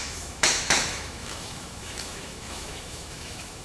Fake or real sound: fake